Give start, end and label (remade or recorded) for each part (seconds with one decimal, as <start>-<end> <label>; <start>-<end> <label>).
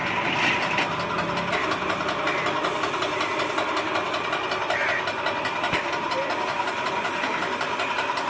0.0-8.3 recorded